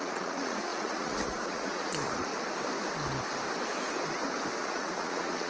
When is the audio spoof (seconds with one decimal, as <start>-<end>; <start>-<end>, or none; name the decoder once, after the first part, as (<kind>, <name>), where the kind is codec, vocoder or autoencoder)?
0.0-2.3 (vocoder, Vocos); 4.6-5.5